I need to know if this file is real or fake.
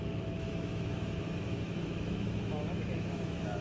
fake